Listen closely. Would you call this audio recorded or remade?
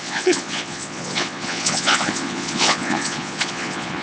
remade